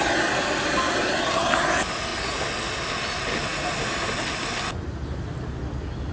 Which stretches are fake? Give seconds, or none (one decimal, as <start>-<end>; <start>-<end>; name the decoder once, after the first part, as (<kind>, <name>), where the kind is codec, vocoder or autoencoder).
none

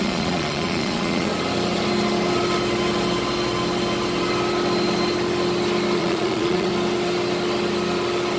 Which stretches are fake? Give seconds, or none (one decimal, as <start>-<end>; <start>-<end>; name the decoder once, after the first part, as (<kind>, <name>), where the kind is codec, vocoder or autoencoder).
0.0-1.3 (vocoder, Vocos); 6.0-6.7

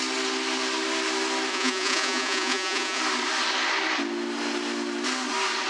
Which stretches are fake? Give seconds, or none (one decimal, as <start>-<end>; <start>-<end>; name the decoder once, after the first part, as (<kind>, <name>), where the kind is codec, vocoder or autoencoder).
1.5-3.0 (vocoder, Vocos)

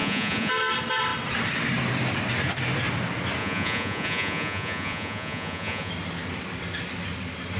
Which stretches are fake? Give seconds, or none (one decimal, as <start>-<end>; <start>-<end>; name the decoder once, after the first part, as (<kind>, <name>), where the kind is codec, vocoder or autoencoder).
0.0-0.5 (vocoder, Vocos); 3.4-5.9

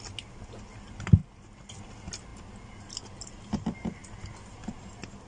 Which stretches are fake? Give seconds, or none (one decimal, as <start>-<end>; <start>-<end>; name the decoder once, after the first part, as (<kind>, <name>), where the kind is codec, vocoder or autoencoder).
none

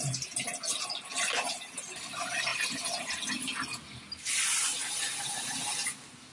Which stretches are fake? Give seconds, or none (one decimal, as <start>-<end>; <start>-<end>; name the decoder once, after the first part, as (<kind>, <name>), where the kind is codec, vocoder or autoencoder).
none

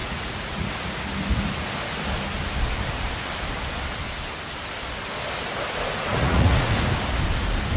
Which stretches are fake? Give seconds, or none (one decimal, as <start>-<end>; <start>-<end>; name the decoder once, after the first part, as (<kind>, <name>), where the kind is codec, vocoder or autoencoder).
0.0-0.7 (vocoder, Vocos); 5.9-6.7

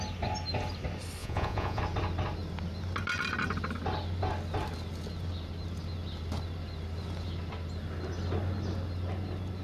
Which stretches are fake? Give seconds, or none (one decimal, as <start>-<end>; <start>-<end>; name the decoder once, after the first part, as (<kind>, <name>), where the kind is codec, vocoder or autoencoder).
1.2-1.8 (vocoder, Vocos)